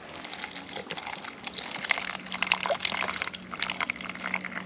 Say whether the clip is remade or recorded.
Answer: recorded